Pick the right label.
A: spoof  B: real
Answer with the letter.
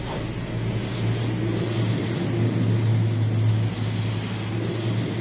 B